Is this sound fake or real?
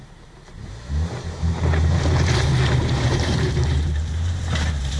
fake